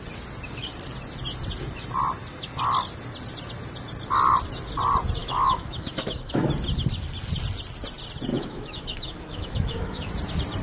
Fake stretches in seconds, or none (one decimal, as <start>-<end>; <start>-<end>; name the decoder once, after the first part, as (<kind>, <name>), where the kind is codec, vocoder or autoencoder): 5.2-6.5 (autoencoder, DAC-VAE); 8.3-10.1